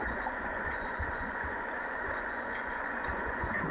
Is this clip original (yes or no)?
no